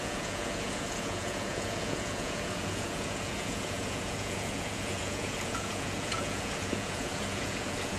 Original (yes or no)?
no